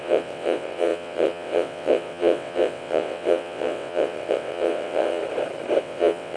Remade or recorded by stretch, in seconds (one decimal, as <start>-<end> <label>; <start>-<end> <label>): 0.0-5.2 remade; 5.2-5.8 recorded; 5.8-6.4 remade